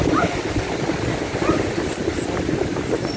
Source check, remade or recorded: recorded